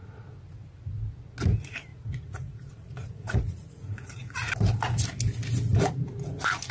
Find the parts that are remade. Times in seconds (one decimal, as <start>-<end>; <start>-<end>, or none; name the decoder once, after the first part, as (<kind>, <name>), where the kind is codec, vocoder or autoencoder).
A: 1.9-4.5 (vocoder, Vocos)